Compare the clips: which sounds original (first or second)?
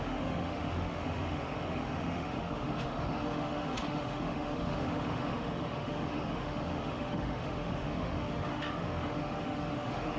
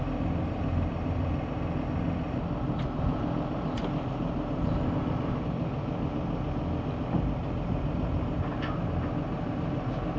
second